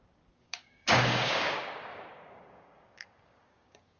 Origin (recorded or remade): remade